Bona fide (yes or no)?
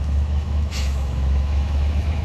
no